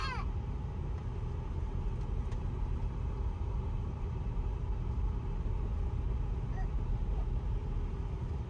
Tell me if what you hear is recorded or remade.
recorded